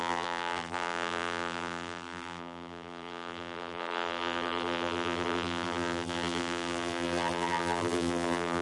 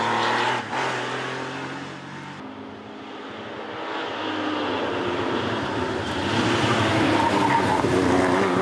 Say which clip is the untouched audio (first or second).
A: second